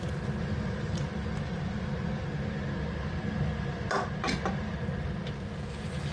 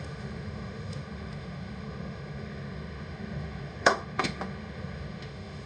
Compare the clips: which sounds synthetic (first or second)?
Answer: second